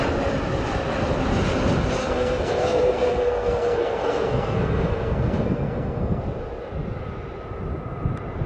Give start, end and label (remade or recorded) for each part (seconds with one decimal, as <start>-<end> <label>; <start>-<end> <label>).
0.0-2.0 recorded; 2.0-6.2 remade; 6.2-8.5 recorded